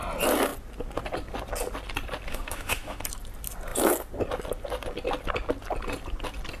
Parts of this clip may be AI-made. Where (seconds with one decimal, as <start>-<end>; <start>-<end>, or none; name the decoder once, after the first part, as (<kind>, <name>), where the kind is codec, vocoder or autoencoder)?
2.3-3.0 (autoencoder, DAC-VAE)